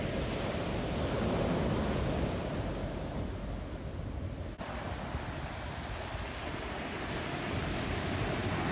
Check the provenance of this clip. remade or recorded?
recorded